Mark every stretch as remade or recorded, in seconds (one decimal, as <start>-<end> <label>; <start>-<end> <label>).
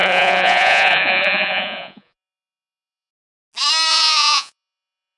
0.0-3.1 remade; 3.1-3.9 recorded; 3.9-5.2 remade